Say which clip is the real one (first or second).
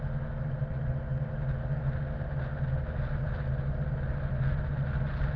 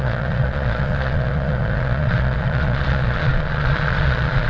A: first